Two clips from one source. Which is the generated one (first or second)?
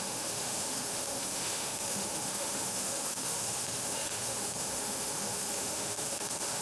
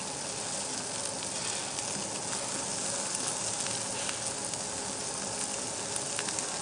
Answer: first